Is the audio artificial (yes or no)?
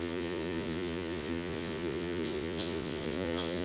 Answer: yes